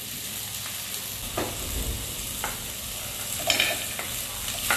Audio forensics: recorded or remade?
recorded